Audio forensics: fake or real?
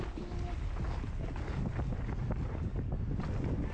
real